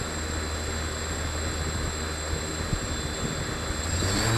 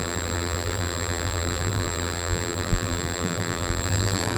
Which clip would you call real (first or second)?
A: first